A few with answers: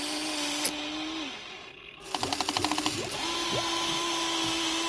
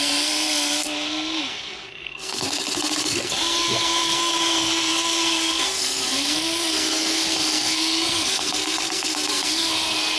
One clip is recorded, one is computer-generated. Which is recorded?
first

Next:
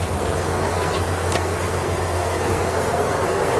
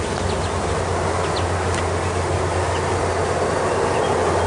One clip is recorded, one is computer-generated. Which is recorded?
second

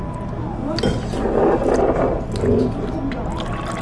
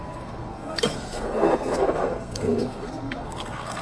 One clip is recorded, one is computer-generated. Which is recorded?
first